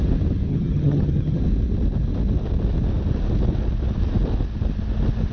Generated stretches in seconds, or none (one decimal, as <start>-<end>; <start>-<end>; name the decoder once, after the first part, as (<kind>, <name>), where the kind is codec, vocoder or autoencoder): 0.5-1.4 (vocoder, HiFi-GAN)